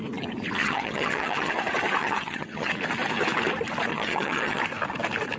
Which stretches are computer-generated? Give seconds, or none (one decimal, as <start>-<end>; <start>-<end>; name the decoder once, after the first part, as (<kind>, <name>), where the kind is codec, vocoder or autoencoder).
0.6-1.5 (vocoder, HiFi-GAN); 2.0-2.7; 3.9-4.6